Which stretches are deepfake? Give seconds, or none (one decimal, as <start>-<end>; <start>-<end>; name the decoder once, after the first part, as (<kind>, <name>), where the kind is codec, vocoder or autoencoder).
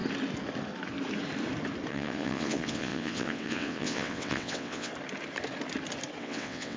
1.9-4.9 (vocoder, WaveNeXt); 6.2-6.8